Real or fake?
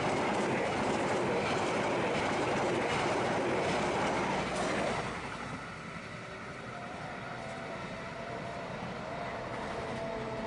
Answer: real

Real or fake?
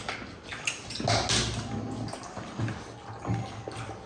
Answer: real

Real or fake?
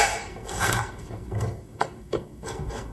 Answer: fake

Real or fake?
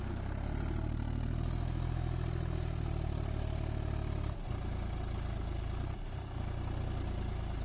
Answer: real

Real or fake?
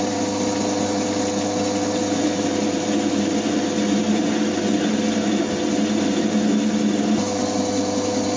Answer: real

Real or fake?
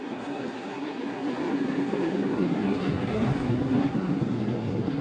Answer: fake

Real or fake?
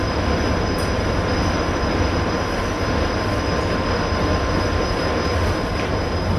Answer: real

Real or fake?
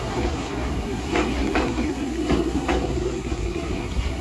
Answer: fake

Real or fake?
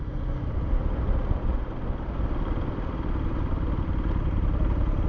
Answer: real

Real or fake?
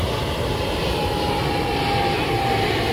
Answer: real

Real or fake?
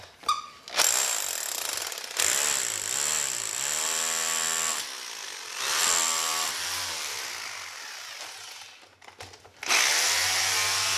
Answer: real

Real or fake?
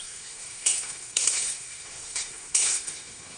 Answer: fake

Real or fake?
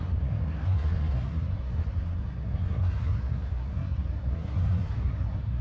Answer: fake